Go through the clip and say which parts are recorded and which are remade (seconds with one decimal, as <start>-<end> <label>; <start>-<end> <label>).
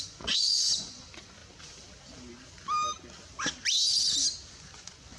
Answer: 0.0-1.4 remade; 1.4-4.5 recorded; 4.5-5.2 remade